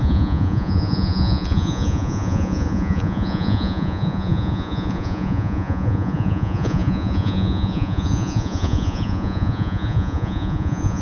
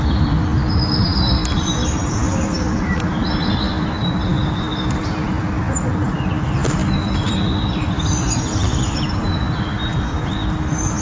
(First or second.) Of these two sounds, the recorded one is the second